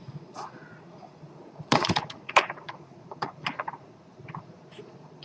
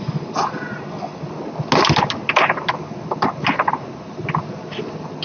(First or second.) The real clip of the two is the second